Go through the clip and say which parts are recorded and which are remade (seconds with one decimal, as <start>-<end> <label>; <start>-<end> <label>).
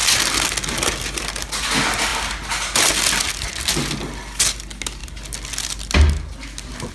0.0-6.9 recorded